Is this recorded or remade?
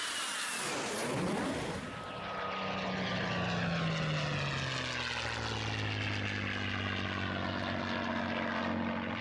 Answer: recorded